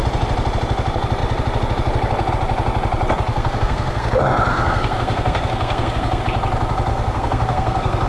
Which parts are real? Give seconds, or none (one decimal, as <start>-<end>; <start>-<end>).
0.0-3.3; 4.1-4.5; 6.2-6.9